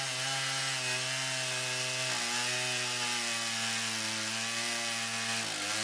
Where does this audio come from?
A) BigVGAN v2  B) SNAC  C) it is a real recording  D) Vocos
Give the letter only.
C